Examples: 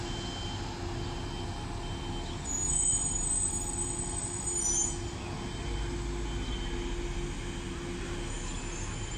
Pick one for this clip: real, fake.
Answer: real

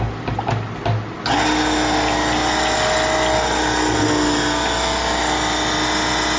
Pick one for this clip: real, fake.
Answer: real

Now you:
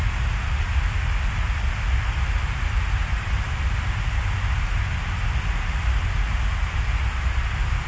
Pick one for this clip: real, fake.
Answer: real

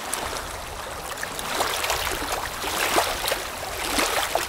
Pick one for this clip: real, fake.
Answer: real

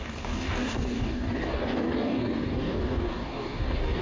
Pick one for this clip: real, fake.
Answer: fake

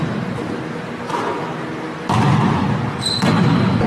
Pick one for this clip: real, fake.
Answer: real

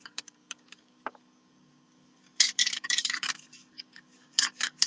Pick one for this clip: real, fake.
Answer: fake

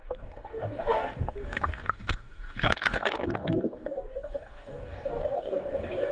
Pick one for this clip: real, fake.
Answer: fake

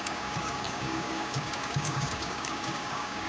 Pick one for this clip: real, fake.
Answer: fake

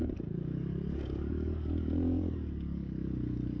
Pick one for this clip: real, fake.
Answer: fake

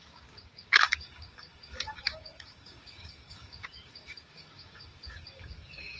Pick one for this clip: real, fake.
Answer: fake